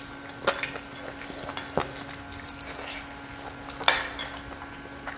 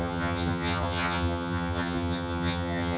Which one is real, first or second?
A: first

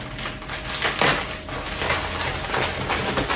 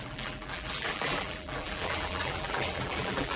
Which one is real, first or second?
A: first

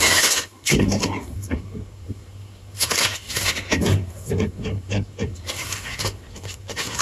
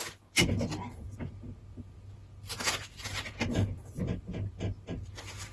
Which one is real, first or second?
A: second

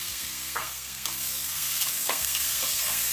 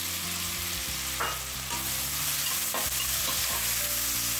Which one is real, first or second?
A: second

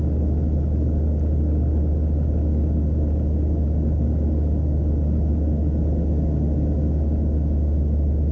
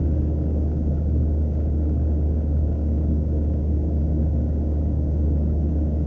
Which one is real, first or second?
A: first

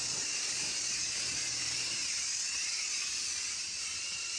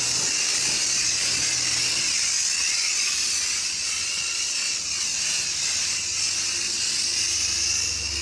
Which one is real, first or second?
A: second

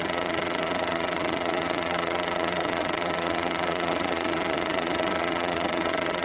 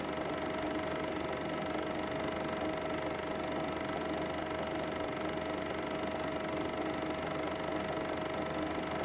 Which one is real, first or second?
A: second